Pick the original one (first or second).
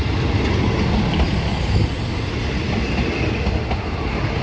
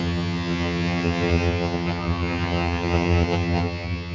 first